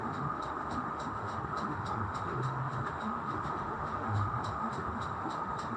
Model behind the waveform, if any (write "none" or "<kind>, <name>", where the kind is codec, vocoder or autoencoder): autoencoder, DAC-VAE